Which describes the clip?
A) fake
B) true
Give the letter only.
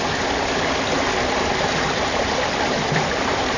B